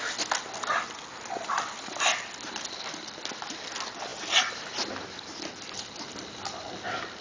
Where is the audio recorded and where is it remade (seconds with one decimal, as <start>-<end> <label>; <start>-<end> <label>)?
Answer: 0.0-7.2 recorded